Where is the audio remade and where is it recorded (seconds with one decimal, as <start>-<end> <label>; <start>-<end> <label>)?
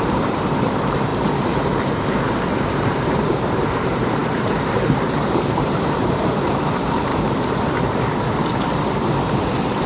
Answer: 0.0-1.1 remade; 1.1-2.3 recorded; 2.3-7.1 remade; 7.1-8.6 recorded; 8.6-9.9 remade